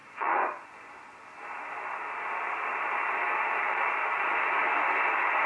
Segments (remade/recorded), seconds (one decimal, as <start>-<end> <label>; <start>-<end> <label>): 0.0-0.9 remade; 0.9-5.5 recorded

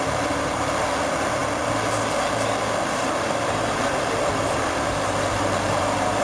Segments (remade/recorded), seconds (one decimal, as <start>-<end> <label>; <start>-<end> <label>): 0.0-1.4 remade; 1.4-3.0 recorded; 3.0-6.2 remade

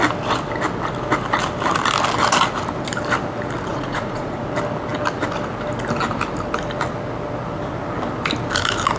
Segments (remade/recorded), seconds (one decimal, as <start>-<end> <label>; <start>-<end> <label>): 0.0-3.7 recorded; 3.7-4.4 remade; 4.4-9.0 recorded